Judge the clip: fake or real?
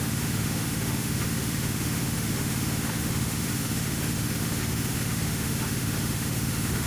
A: fake